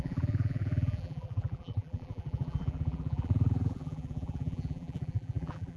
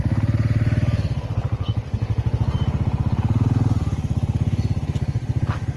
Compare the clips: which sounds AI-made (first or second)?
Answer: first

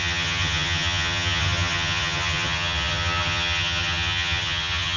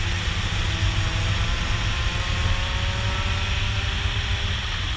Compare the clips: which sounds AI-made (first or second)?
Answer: first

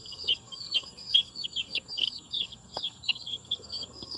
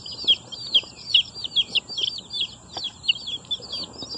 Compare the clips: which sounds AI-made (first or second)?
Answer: first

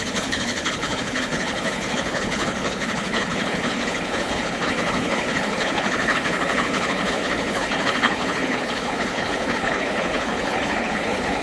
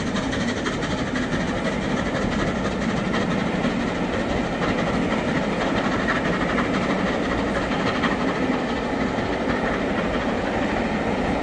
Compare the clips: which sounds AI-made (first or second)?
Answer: first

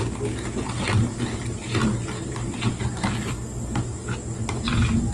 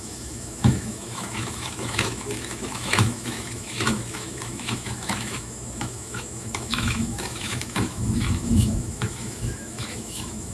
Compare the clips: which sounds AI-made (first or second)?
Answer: second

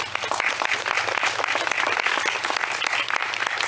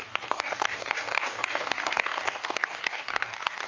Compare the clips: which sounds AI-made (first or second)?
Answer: second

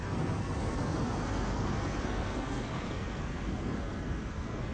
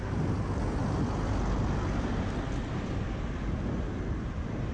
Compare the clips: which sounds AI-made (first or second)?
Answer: first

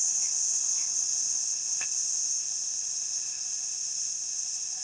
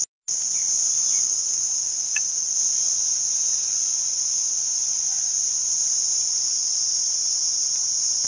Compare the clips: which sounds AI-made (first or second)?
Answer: first